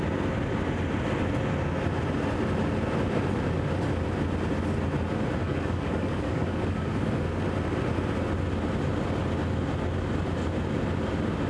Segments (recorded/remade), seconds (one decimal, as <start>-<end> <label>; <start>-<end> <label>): 0.0-5.4 recorded; 5.4-7.4 remade; 7.4-11.5 recorded